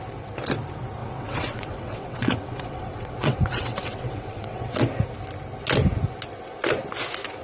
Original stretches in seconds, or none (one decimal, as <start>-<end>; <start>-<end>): 0.0-1.0; 4.8-7.4